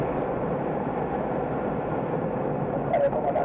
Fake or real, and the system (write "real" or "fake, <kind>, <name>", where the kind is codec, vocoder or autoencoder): real